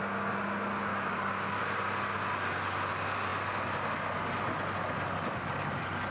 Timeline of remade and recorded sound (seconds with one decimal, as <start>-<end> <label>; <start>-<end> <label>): 0.0-0.9 recorded; 0.9-1.6 remade; 1.6-6.1 recorded